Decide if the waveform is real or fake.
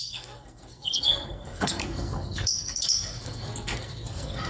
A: fake